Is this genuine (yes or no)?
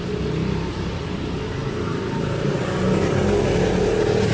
yes